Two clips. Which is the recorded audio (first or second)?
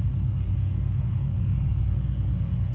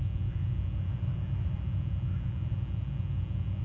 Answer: second